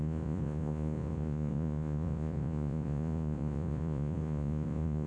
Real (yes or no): no